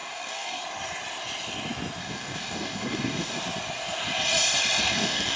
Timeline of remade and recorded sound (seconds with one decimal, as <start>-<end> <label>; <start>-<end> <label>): 0.0-0.6 remade; 0.6-2.0 recorded; 2.0-3.4 remade; 3.4-4.8 recorded; 4.8-5.4 remade

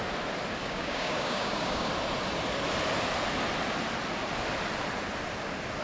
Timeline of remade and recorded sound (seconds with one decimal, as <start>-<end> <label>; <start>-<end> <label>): 0.0-0.6 recorded; 0.6-1.9 remade; 1.9-5.8 recorded

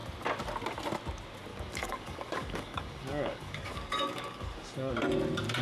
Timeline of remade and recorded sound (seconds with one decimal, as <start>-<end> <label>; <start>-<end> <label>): 0.0-1.5 recorded; 1.5-4.9 remade; 4.9-5.6 recorded

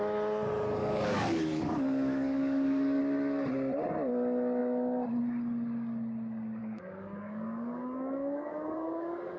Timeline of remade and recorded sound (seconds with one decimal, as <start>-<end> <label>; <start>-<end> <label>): 0.0-0.8 recorded; 0.8-3.0 remade; 3.0-6.6 recorded; 6.6-9.4 remade

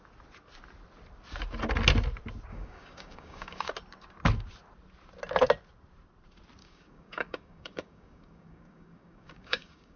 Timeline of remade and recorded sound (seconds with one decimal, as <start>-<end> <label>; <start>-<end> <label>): 0.0-2.5 recorded; 2.5-3.7 remade; 3.7-6.6 recorded; 6.6-10.0 remade

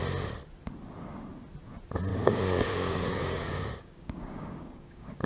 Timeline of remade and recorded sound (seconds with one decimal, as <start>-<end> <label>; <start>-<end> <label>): 0.0-2.1 recorded; 2.1-5.2 remade

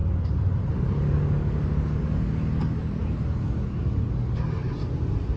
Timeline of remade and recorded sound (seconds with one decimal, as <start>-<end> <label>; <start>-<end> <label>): 0.0-0.8 recorded; 0.8-4.6 remade; 4.6-5.4 recorded

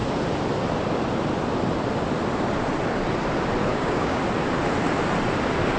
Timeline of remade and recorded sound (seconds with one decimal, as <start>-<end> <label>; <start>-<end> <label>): 0.0-3.7 recorded; 3.7-4.2 remade; 4.2-5.8 recorded